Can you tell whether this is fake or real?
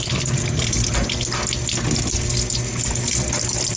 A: real